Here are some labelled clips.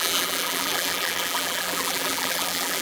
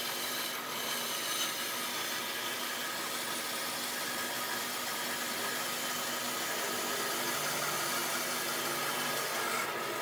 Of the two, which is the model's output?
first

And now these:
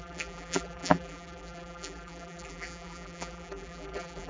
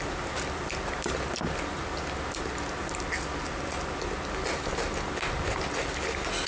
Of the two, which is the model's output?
first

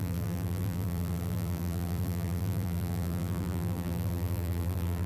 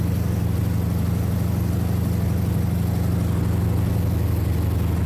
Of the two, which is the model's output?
first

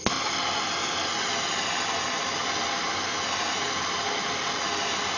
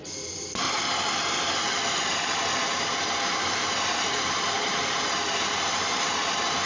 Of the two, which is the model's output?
second